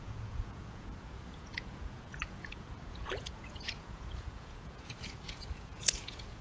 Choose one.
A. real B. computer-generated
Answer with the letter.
B